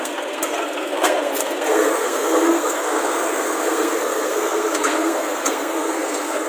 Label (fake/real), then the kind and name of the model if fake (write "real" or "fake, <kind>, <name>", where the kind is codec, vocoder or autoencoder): fake, codec, SNAC